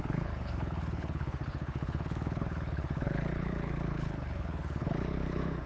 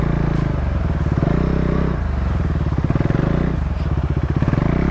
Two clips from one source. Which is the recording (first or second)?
second